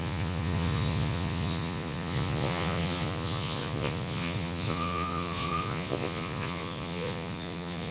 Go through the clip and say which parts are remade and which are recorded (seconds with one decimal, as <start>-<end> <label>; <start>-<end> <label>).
0.0-7.9 remade